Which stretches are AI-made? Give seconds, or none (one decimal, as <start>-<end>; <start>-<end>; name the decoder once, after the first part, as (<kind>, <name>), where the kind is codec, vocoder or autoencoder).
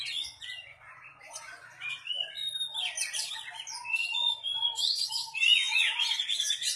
0.0-2.4 (vocoder, Vocos); 3.7-6.8